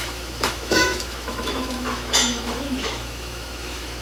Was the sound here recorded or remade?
remade